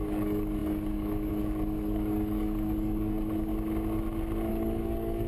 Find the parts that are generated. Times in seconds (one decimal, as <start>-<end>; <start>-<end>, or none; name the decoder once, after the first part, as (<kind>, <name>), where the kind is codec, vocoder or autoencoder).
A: 0.0-3.5 (codec, DAC); 4.5-5.3

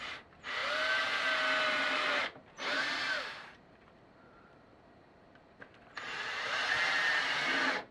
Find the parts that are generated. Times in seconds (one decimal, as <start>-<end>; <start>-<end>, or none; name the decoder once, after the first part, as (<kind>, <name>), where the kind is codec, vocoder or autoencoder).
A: 0.0-0.6 (vocoder, BigVGAN v2); 2.1-7.9

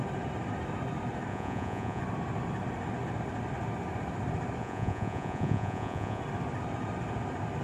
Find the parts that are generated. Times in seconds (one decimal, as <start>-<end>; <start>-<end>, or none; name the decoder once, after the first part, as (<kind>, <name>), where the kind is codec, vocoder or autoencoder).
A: 1.3-2.0 (vocoder, Vocos); 4.6-6.2